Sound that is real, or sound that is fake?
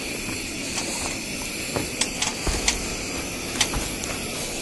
fake